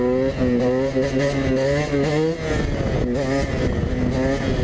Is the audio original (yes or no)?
yes